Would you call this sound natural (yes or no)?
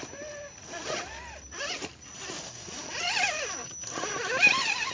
yes